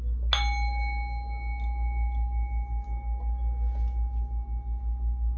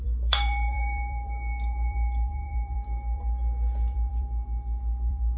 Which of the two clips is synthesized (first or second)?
second